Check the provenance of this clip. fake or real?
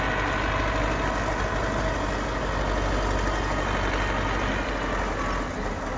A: real